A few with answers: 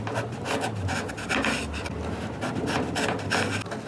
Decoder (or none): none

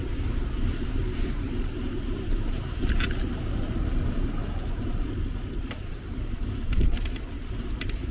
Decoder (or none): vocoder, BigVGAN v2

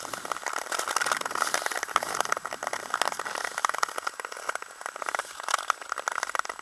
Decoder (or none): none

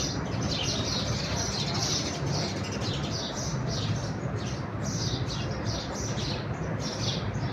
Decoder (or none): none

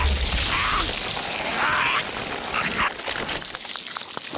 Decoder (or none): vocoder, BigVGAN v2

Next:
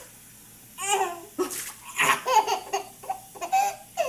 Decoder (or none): none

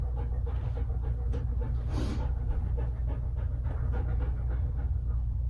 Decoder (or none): none